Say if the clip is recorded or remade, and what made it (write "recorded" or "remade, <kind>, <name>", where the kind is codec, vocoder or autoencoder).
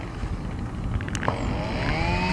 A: recorded